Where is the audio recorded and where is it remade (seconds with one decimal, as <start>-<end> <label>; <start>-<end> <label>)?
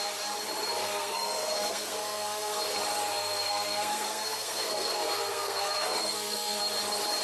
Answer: 0.0-0.8 recorded; 0.8-2.6 remade; 2.6-3.2 recorded; 3.2-6.6 remade; 6.6-7.2 recorded